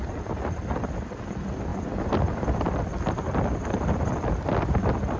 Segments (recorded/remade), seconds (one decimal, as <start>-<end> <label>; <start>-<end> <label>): 0.0-5.2 remade